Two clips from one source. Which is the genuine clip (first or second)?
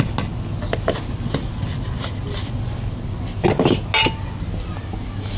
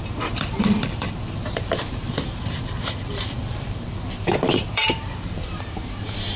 first